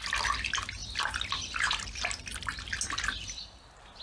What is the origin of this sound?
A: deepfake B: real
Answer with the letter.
B